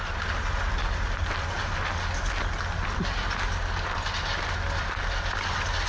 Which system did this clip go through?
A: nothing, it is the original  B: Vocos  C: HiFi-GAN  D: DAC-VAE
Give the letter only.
A